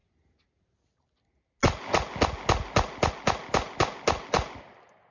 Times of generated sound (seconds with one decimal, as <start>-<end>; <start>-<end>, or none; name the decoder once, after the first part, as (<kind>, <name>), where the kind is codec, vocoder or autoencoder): none